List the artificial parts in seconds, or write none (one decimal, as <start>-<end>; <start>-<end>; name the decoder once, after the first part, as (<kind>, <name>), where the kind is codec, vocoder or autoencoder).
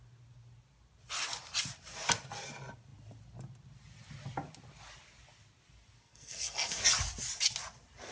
6.0-6.8 (codec, SNAC)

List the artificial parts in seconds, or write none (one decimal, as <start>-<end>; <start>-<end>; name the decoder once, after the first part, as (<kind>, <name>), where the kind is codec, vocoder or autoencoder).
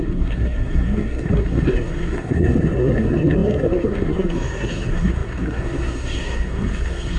0.0-7.2 (codec, SNAC)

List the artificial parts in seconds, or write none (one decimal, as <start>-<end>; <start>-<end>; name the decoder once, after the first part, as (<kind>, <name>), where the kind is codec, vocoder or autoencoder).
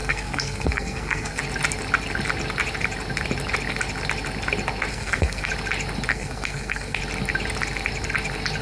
0.0-1.4 (codec, SNAC); 4.9-5.5; 6.1-7.0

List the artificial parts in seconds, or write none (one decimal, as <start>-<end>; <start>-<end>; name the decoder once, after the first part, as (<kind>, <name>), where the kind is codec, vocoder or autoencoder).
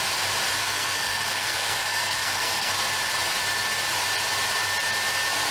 0.6-2.7 (codec, SNAC)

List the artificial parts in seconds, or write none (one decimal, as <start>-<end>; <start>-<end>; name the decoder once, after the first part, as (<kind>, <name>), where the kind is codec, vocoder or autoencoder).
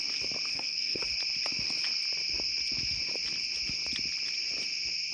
0.5-1.0 (codec, SNAC)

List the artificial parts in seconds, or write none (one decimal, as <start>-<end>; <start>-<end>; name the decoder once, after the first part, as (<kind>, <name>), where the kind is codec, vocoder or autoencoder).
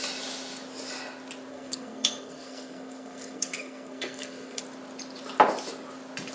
1.5-4.6 (codec, SNAC)